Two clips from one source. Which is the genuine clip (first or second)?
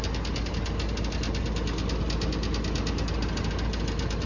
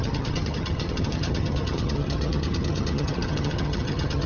first